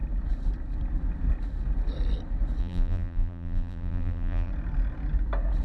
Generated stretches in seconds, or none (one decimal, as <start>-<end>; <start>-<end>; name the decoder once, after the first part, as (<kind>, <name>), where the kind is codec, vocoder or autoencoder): 2.6-4.5 (vocoder, BigVGAN v2)